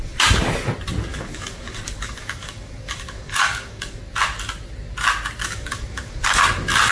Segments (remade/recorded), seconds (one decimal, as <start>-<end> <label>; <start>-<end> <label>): 0.0-1.1 recorded; 1.1-4.0 remade; 4.0-5.4 recorded; 5.4-6.4 remade; 6.4-6.9 recorded

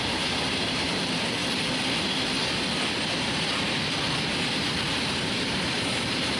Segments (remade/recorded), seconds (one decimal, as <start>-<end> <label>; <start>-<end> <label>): 0.0-1.4 remade; 1.4-4.4 recorded; 4.4-6.4 remade

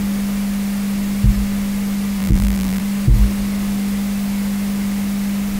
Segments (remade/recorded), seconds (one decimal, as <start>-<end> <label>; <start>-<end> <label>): 0.0-2.2 recorded; 2.2-2.8 remade; 2.8-5.6 recorded